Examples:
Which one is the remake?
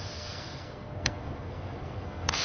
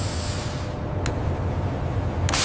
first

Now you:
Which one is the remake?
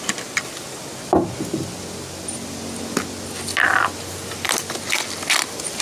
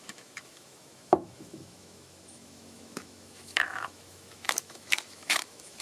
second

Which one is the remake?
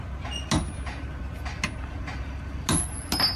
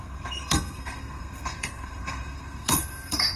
second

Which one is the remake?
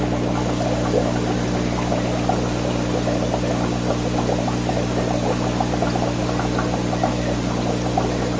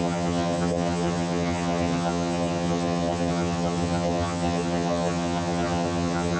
second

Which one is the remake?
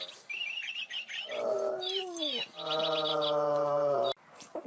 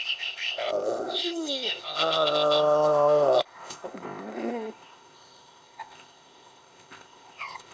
second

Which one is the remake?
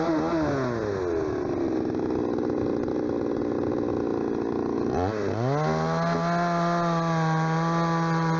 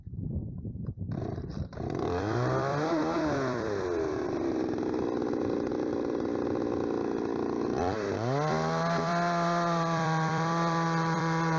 second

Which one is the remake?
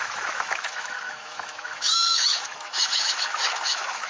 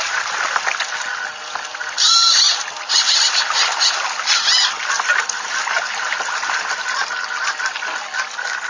first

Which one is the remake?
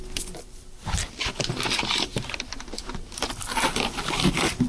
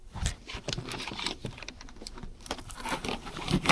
second